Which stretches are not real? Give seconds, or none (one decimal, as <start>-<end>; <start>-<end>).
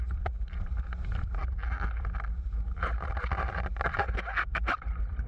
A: 0.0-1.4; 3.2-5.3